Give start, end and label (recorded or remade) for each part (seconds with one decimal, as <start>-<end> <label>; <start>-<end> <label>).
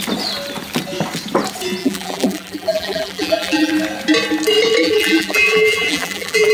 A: 0.0-1.8 recorded; 1.8-3.7 remade; 3.7-4.8 recorded; 4.8-6.5 remade